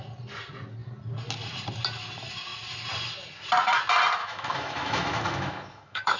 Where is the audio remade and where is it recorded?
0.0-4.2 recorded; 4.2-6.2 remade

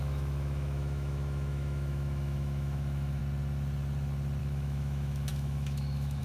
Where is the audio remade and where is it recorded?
0.0-3.2 remade; 3.2-4.4 recorded; 4.4-6.2 remade